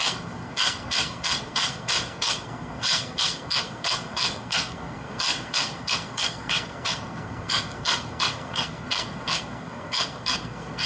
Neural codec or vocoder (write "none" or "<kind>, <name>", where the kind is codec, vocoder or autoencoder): codec, SNAC